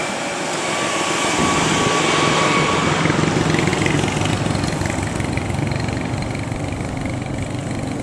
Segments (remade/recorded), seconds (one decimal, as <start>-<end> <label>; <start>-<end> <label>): 0.0-8.0 recorded